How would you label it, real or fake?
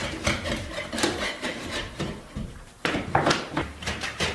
fake